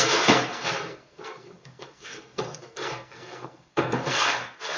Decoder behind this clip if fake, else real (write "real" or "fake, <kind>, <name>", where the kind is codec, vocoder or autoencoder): fake, codec, SNAC